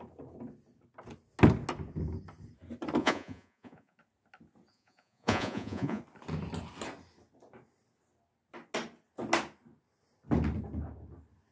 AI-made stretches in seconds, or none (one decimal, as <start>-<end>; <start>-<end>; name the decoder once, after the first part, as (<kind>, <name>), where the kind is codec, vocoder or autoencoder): 3.0-4.0 (vocoder, Vocos); 4.7-6.0